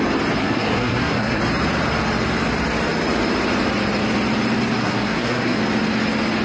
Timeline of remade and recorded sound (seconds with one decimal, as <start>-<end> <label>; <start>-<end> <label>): 0.0-0.4 recorded; 0.4-1.4 remade; 1.4-4.8 recorded; 4.8-5.6 remade; 5.6-6.4 recorded